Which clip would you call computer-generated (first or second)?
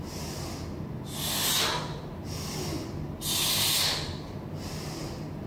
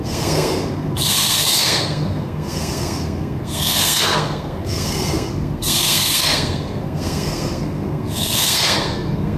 second